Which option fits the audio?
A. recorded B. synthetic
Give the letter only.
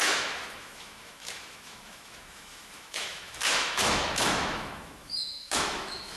B